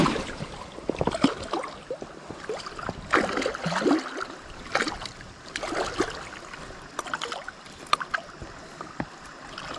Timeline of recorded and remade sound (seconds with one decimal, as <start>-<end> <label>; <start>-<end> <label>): 0.0-1.0 remade; 1.0-9.8 recorded